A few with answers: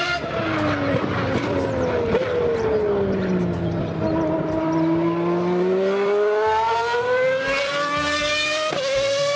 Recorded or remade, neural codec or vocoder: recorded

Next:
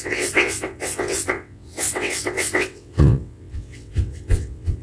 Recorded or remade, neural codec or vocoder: remade, vocoder, WaveNeXt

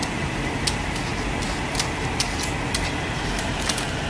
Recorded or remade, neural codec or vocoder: recorded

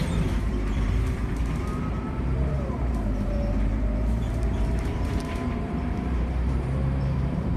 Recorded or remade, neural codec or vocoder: remade, vocoder, BigVGAN v2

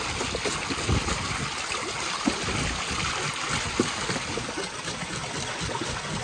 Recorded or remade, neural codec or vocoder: recorded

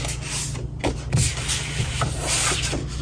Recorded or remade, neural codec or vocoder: recorded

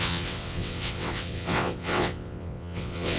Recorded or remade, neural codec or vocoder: remade, vocoder, WaveNeXt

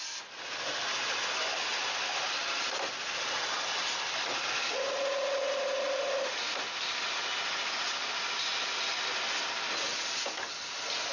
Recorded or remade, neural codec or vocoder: recorded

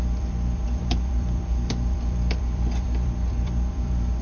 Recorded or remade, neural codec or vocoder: remade, vocoder, BigVGAN v2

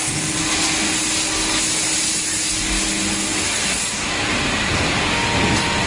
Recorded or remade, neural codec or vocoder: recorded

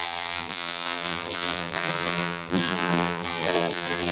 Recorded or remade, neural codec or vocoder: remade, vocoder, BigVGAN v2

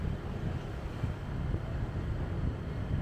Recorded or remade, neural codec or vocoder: recorded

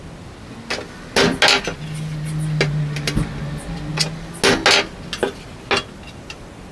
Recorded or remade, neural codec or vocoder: recorded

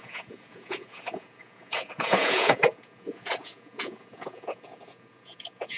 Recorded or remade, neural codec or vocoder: remade, vocoder, Vocos